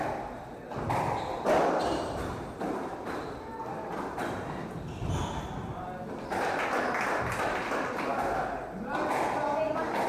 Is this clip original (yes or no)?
yes